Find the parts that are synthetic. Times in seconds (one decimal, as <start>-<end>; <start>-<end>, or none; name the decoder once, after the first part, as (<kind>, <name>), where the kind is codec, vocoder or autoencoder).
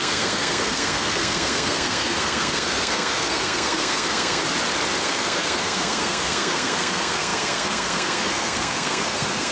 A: 0.0-4.4 (codec, SNAC); 5.0-9.5